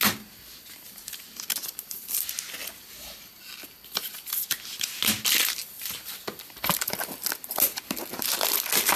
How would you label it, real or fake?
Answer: real